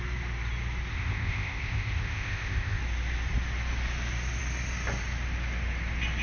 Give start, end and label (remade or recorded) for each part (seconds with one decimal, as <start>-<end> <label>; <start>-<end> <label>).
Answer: 0.0-0.9 recorded; 0.9-2.8 remade; 2.8-6.2 recorded